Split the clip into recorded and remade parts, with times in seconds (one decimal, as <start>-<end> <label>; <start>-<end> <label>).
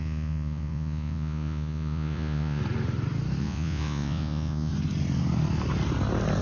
0.0-2.6 remade; 2.6-3.4 recorded; 3.4-4.7 remade; 4.7-6.4 recorded